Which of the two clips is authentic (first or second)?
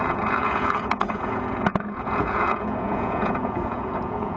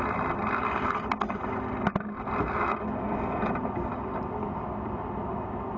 second